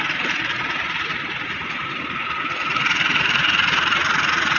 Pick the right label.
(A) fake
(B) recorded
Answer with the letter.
A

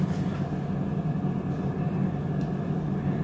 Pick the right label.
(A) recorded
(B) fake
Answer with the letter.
A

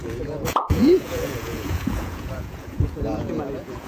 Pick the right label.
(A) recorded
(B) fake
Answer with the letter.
B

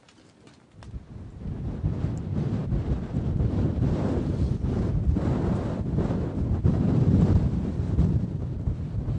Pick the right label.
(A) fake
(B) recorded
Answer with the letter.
B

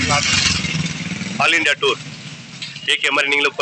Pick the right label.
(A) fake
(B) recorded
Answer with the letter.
B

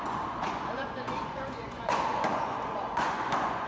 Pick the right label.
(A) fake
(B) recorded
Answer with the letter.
A